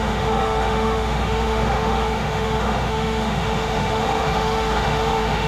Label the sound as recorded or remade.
remade